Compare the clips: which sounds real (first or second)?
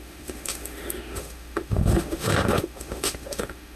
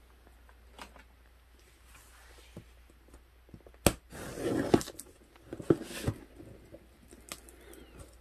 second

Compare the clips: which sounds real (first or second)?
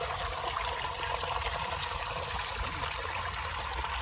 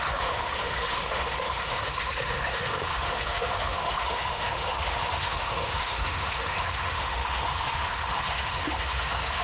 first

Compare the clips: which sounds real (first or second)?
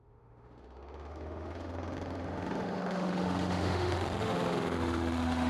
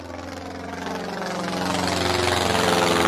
second